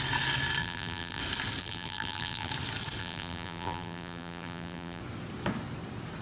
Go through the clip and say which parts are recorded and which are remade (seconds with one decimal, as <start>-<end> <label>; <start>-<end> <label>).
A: 0.0-0.6 recorded; 0.6-1.2 remade; 1.2-1.6 recorded; 1.6-2.5 remade; 2.5-3.0 recorded; 3.0-5.0 remade; 5.0-6.2 recorded